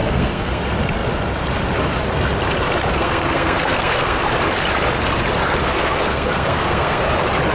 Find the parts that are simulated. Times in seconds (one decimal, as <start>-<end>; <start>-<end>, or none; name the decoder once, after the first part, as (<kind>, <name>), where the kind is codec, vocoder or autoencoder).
0.0-0.6 (codec, SNAC); 2.9-4.2; 5.6-7.0